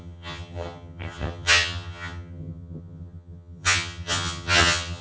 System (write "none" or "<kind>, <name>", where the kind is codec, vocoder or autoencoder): vocoder, HiFi-GAN